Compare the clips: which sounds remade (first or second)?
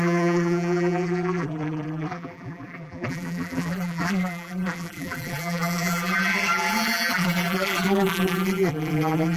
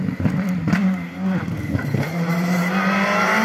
first